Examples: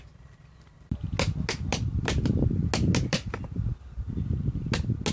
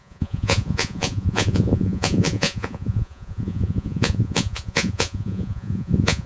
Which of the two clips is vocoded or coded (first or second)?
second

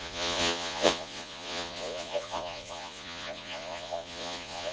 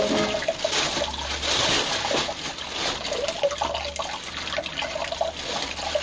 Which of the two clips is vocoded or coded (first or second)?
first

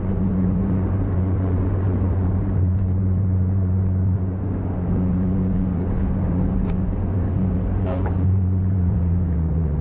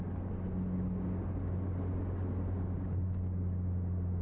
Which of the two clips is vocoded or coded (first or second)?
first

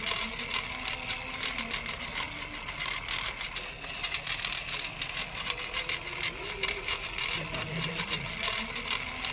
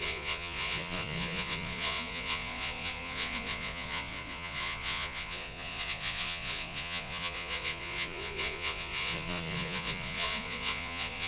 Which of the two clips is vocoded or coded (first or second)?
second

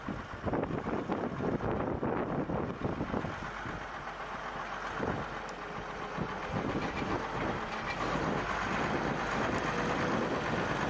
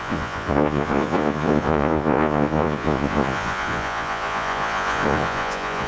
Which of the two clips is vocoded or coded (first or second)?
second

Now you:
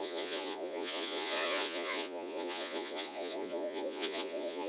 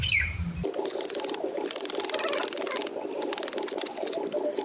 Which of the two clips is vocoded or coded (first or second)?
first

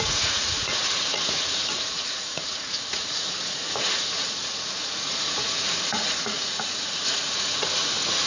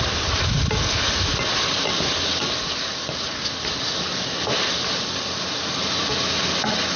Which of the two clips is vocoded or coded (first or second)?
first